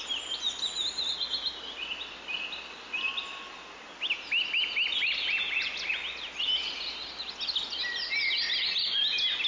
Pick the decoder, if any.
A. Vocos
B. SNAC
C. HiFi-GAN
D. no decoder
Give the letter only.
D